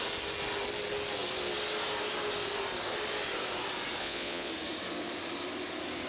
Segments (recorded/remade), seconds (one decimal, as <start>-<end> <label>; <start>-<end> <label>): 0.0-4.0 recorded; 4.0-4.5 remade; 4.5-6.1 recorded